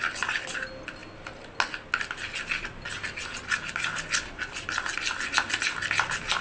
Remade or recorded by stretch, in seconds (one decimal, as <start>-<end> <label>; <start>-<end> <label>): 0.0-6.4 recorded